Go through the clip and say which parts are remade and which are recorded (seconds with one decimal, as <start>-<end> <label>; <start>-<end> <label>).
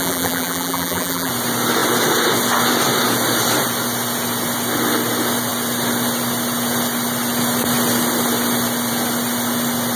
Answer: 0.0-1.3 remade; 1.3-10.0 recorded